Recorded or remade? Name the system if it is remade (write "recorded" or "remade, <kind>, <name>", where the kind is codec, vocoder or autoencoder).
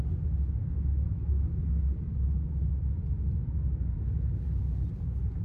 recorded